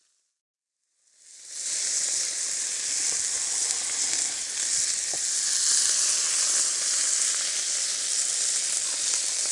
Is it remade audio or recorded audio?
recorded